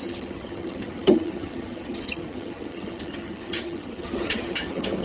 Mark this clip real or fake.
fake